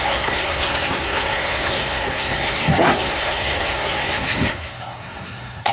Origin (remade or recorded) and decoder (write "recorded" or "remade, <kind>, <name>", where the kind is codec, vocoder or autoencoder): remade, codec, SNAC